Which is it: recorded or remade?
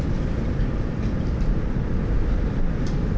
recorded